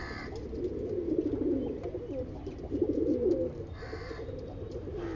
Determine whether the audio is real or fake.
real